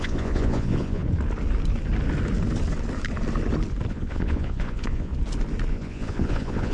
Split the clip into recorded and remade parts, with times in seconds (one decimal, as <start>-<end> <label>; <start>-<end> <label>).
0.0-1.0 remade; 1.0-3.9 recorded; 3.9-5.1 remade; 5.1-5.7 recorded; 5.7-6.7 remade